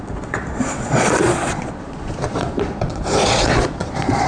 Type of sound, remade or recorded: remade